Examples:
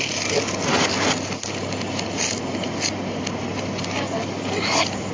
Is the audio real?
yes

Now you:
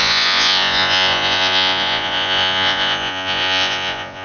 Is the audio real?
no